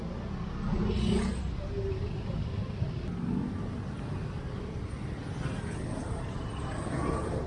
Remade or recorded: recorded